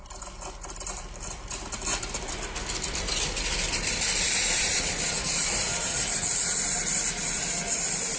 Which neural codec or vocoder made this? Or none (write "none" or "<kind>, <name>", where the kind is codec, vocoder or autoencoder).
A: vocoder, BigVGAN v2